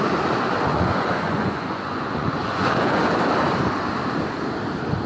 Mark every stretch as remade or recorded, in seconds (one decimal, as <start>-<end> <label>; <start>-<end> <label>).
0.0-0.7 recorded; 0.7-3.0 remade; 3.0-5.1 recorded